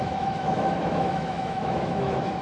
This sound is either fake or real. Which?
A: fake